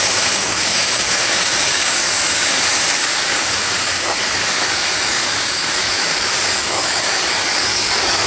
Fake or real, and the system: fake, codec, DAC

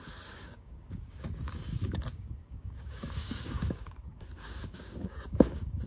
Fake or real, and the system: fake, codec, DAC